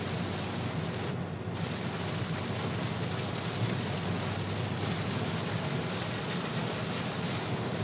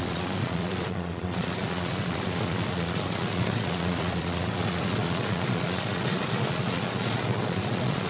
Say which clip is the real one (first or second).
first